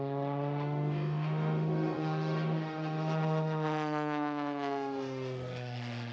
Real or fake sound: fake